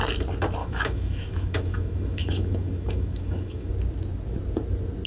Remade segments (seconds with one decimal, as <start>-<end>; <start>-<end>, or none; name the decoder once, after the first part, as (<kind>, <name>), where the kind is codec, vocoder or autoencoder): 0.6-3.7 (autoencoder, DAC-VAE)